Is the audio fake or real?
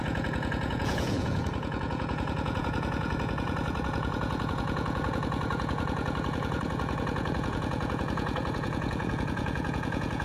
fake